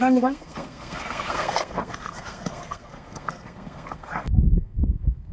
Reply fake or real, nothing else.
fake